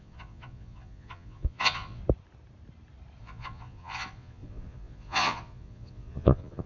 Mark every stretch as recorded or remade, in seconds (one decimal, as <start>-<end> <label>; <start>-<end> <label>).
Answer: 0.0-2.0 remade; 2.0-3.2 recorded; 3.2-6.7 remade